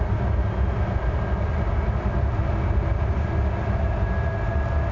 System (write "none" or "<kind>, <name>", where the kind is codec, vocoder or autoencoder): none